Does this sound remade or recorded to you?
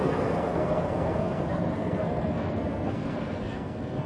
remade